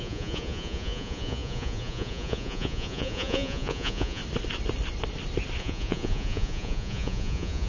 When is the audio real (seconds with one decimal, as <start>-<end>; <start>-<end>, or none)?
4.2-5.6